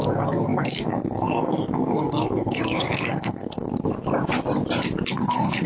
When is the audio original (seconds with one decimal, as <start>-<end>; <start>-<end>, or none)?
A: 3.7-5.1